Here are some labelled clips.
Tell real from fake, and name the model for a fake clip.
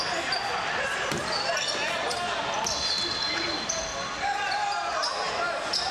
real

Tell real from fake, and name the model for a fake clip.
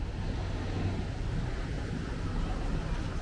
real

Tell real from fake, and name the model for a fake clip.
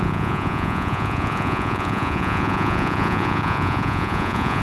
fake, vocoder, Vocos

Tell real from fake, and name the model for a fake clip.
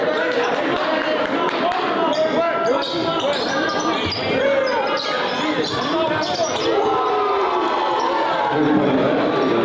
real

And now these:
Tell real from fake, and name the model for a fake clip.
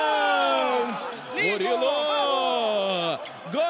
real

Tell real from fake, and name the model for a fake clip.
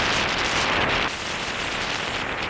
real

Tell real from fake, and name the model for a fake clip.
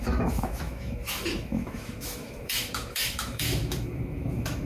fake, autoencoder, DAC-VAE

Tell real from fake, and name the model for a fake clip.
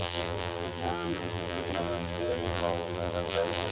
fake, vocoder, BigVGAN v2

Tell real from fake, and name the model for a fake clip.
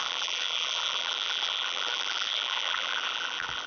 fake, vocoder, BigVGAN v2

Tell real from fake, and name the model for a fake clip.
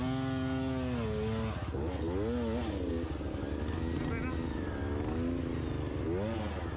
real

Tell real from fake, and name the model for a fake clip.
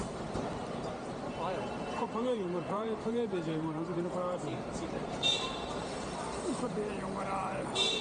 fake, vocoder, BigVGAN v2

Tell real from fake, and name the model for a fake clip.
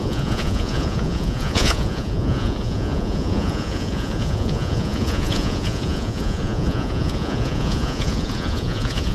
fake, vocoder, Vocos